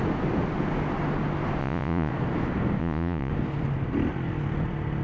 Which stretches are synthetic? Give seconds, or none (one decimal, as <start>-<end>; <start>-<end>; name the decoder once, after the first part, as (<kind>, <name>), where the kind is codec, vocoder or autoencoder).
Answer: 1.6-2.1 (vocoder, Vocos); 2.8-3.3

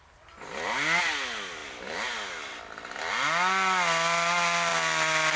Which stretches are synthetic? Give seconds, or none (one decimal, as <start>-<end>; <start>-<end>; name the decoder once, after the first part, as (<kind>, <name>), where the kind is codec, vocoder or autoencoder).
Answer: none

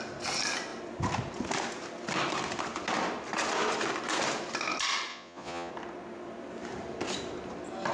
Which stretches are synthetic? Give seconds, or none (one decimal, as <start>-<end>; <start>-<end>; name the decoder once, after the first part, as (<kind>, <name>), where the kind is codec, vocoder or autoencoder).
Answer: 5.1-5.7 (vocoder, Vocos)

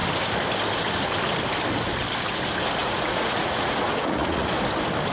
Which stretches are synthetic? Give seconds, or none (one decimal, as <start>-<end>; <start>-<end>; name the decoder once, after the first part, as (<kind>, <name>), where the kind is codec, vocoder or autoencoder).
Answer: 2.8-4.5 (vocoder, Vocos)

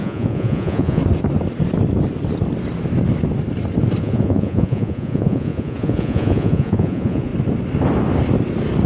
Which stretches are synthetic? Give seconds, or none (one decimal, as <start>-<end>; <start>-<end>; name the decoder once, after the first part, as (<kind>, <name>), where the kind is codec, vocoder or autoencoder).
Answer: 0.0-1.0 (vocoder, Vocos); 4.0-7.3